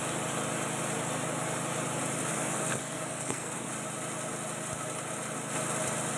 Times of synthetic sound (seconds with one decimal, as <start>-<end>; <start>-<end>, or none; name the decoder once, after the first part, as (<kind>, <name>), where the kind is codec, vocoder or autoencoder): 2.3-3.7 (codec, SNAC)